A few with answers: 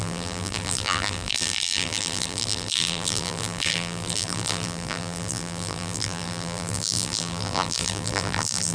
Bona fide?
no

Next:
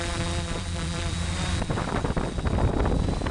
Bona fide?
no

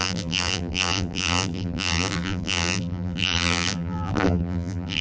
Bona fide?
no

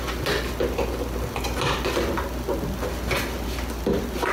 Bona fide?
yes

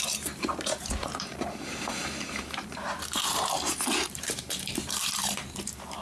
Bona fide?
no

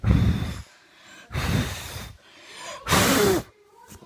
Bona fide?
no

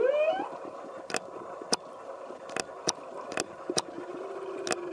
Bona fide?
yes